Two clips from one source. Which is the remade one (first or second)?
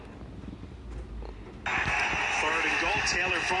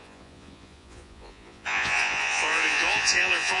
second